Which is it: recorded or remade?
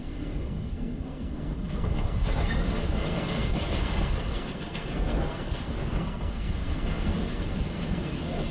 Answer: remade